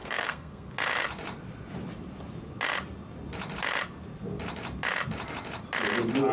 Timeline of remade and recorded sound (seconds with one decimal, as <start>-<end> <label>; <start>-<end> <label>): 0.0-0.7 remade; 0.7-6.3 recorded